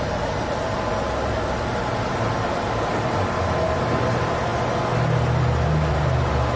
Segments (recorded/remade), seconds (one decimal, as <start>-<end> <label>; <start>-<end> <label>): 0.0-2.9 remade; 2.9-3.6 recorded; 3.6-4.5 remade; 4.5-5.9 recorded; 5.9-6.6 remade